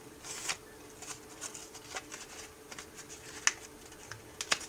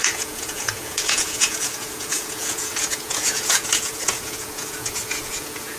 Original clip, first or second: first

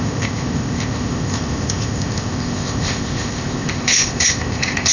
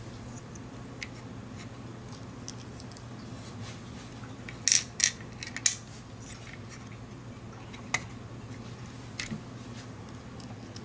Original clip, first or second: second